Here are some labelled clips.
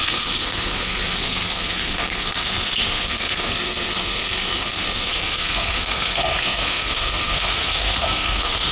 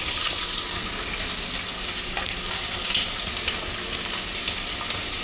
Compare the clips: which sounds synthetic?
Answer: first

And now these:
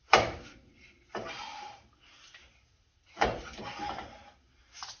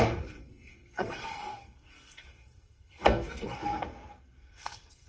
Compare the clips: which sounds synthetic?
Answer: second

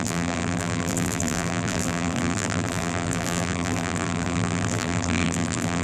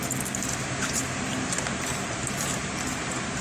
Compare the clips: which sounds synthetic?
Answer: first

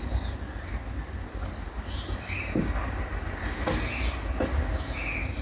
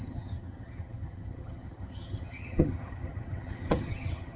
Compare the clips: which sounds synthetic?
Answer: second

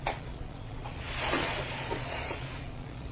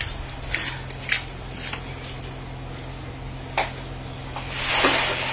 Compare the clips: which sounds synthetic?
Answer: first